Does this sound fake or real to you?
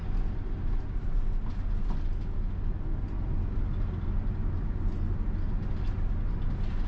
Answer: real